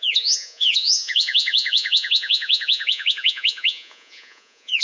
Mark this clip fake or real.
fake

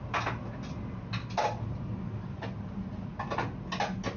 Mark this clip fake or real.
real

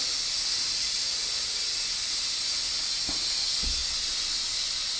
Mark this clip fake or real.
real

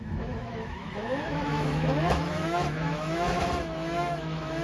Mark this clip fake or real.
fake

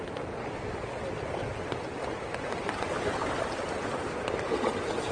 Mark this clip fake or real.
real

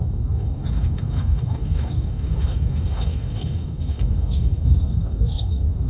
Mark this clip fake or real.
fake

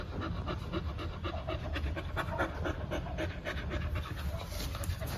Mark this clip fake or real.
real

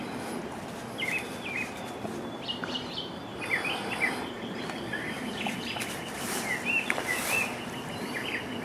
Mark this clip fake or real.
real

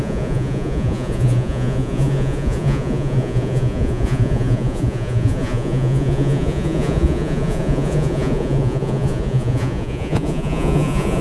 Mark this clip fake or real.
fake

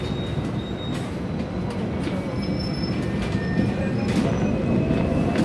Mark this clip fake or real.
real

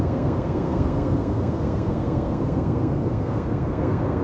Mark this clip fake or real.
fake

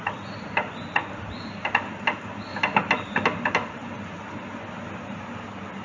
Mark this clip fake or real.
real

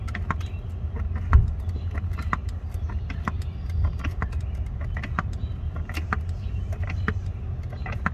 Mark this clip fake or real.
real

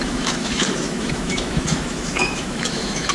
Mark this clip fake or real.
fake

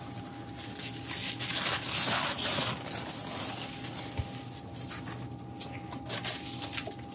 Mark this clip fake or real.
real